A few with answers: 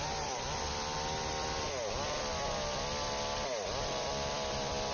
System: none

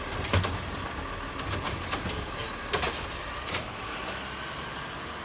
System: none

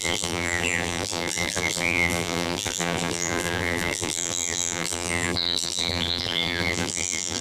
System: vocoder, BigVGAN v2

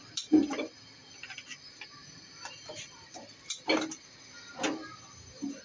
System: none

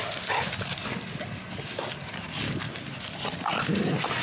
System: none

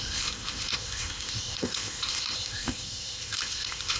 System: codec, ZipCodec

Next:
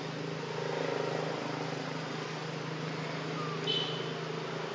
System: none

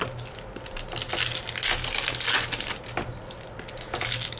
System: none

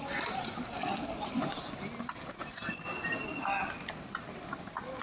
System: none